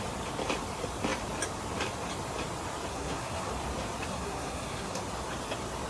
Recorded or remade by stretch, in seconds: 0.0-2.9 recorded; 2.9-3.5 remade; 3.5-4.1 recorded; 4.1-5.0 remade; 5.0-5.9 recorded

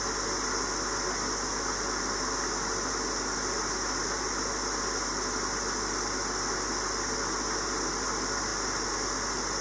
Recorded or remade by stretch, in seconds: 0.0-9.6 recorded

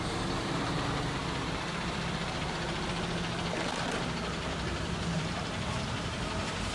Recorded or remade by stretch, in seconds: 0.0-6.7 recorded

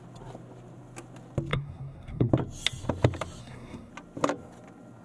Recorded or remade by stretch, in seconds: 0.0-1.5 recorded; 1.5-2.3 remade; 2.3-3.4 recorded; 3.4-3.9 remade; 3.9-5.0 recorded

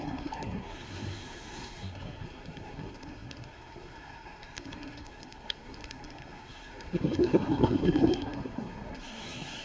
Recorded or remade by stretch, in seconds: 0.0-9.6 remade

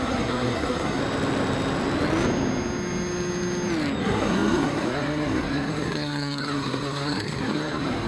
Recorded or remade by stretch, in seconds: 0.0-1.0 remade; 1.0-4.0 recorded; 4.0-8.1 remade